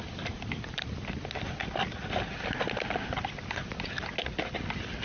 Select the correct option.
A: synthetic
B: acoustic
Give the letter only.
B